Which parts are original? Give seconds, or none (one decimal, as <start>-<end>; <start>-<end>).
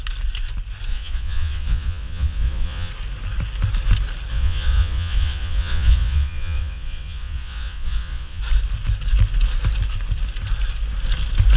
0.0-0.9; 2.9-4.3; 8.4-11.6